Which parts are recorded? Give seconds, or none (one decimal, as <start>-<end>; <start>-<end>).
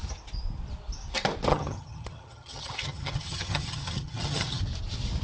0.0-1.5; 4.6-5.2